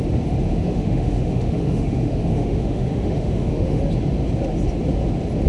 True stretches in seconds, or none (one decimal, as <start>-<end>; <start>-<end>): 0.0-0.5; 3.8-5.5